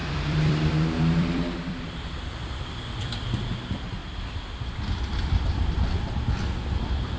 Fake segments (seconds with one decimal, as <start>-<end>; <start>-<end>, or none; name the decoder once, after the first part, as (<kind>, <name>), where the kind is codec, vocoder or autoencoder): 0.0-3.4 (vocoder, BigVGAN v2)